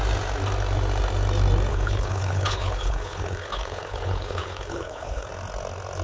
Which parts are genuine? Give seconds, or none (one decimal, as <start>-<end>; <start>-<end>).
0.0-1.7; 5.3-6.0